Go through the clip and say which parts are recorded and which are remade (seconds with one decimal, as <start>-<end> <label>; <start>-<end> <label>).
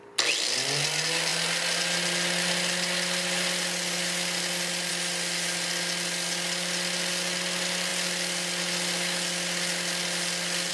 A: 0.0-10.7 recorded